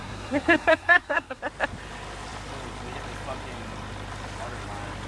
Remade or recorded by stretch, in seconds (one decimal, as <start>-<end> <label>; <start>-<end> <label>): 0.0-1.4 remade; 1.4-5.1 recorded